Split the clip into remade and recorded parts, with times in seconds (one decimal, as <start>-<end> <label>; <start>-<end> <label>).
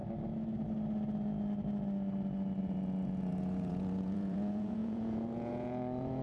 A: 0.0-2.6 recorded; 2.6-6.2 remade